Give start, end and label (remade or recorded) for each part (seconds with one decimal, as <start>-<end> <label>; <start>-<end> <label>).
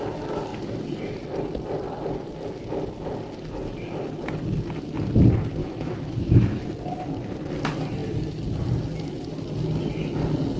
0.0-5.6 recorded; 5.6-6.6 remade; 6.6-10.6 recorded